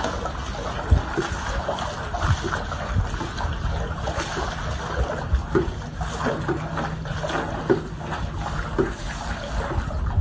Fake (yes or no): no